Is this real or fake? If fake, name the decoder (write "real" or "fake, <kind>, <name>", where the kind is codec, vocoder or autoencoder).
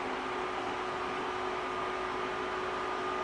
real